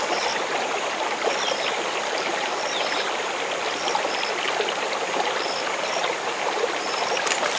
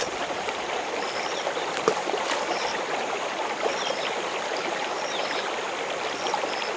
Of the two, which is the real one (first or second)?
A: first